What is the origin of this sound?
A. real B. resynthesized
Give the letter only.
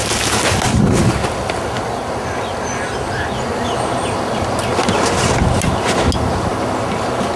A